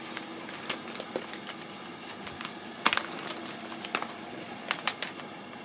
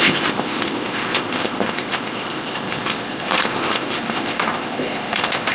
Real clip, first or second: first